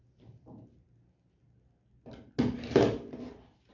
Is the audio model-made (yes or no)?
no